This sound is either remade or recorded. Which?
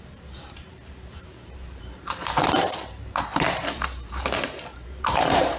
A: remade